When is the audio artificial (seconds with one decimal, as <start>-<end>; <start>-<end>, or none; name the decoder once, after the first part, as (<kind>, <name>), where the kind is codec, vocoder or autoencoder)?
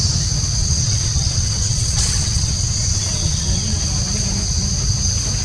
0.6-3.8 (vocoder, WaveNeXt)